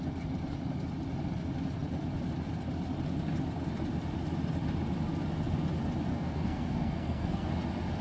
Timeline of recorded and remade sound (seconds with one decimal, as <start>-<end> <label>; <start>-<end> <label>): 0.0-6.1 recorded; 6.1-7.5 remade; 7.5-8.0 recorded